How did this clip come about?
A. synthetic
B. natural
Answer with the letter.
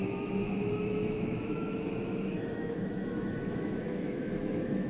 A